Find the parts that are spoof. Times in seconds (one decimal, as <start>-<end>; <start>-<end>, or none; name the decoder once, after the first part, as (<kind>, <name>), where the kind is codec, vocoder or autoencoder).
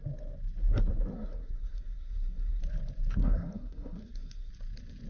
1.1-2.6 (codec, SNAC); 3.2-4.5